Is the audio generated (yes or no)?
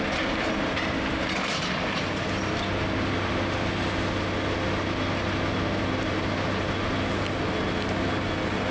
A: no